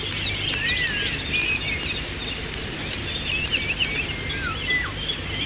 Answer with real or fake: real